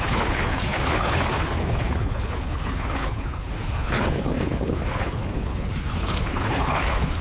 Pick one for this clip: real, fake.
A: fake